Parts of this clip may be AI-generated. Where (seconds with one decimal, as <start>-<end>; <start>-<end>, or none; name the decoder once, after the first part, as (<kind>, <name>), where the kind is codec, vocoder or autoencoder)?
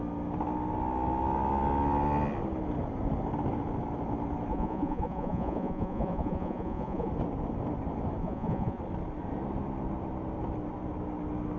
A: 4.5-7.1 (vocoder, Vocos); 8.2-8.8